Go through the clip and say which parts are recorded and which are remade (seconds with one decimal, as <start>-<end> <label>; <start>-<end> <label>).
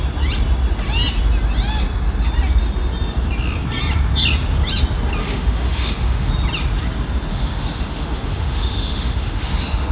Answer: 0.0-5.2 recorded; 5.2-6.3 remade; 6.3-7.3 recorded; 7.3-9.9 remade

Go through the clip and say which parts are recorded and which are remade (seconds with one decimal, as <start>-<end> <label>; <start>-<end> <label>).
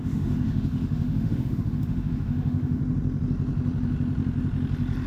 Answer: 0.0-2.8 remade; 2.8-5.1 recorded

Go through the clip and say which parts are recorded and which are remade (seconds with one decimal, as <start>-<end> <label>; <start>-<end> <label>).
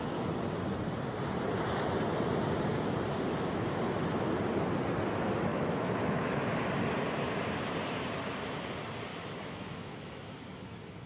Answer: 0.0-5.5 recorded; 5.5-6.4 remade; 6.4-9.1 recorded; 9.1-11.1 remade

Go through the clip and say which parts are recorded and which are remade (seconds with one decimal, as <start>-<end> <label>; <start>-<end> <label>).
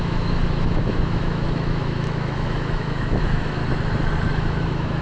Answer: 0.0-3.6 remade; 3.6-4.3 recorded; 4.3-5.0 remade